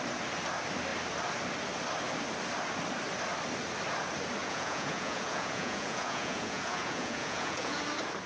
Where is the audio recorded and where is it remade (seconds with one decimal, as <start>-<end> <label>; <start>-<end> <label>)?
0.0-4.4 recorded; 4.4-7.8 remade; 7.8-8.3 recorded